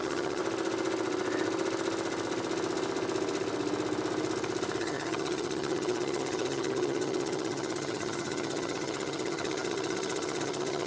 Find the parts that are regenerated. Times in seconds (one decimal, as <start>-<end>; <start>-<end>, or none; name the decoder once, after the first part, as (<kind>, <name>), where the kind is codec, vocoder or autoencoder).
0.0-0.4 (vocoder, HiFi-GAN); 4.8-10.9